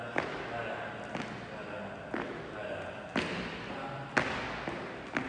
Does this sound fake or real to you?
real